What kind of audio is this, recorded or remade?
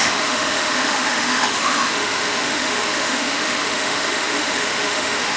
remade